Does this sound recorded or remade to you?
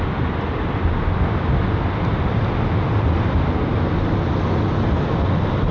recorded